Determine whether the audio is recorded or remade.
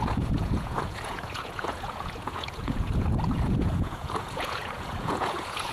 remade